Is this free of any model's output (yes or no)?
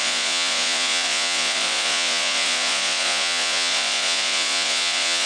no